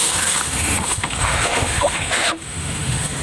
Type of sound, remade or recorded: remade